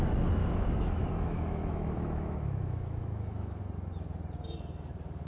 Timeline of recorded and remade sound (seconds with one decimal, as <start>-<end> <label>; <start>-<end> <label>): 0.0-0.4 recorded; 0.4-3.6 remade; 3.6-5.3 recorded